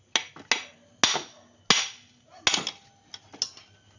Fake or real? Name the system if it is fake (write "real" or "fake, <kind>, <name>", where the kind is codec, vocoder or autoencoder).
real